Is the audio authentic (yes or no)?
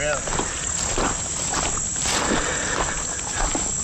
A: yes